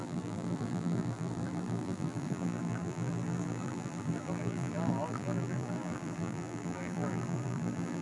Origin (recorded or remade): remade